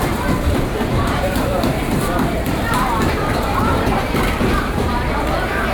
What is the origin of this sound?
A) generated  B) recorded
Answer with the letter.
A